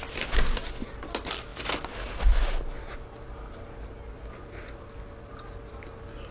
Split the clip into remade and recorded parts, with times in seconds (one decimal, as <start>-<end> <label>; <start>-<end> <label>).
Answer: 0.0-6.3 recorded